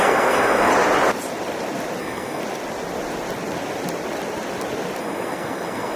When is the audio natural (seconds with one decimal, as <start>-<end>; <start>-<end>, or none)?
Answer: 0.7-2.0; 2.4-5.0